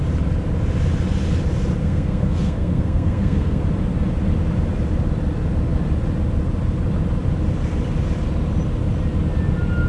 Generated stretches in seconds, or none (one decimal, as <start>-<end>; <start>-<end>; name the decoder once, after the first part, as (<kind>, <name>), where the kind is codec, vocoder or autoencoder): 1.8-3.6 (codec, SNAC)